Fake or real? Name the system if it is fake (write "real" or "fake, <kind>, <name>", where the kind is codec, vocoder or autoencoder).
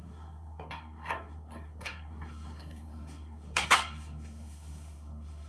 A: fake, codec, SNAC